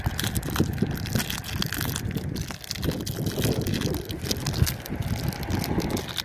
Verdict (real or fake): real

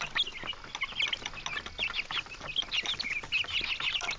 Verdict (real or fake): real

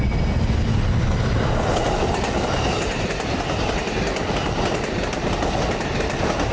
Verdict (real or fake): real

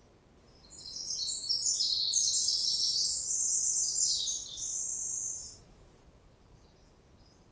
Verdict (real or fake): real